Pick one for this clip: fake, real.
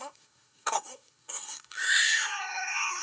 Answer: fake